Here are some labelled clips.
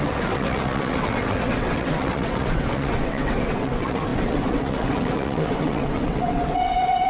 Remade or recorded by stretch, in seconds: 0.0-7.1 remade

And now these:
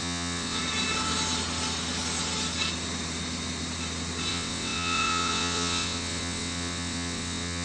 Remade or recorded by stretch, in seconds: 0.0-0.6 remade; 0.6-4.3 recorded; 4.3-7.6 remade

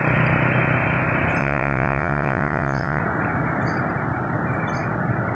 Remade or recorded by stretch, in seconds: 0.0-1.4 recorded; 1.4-3.0 remade; 3.0-5.3 recorded

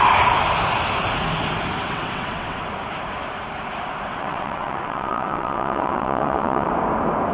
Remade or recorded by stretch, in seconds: 0.0-1.8 recorded; 1.8-2.6 remade; 2.6-4.1 recorded; 4.1-6.7 remade; 6.7-7.3 recorded

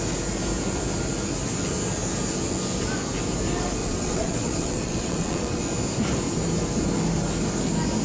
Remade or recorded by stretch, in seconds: 0.0-3.8 recorded; 3.8-5.6 remade; 5.6-8.0 recorded

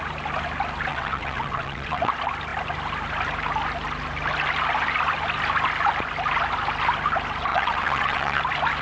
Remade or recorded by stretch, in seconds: 0.0-0.9 recorded; 0.9-2.1 remade; 2.1-7.5 recorded; 7.5-8.4 remade; 8.4-8.8 recorded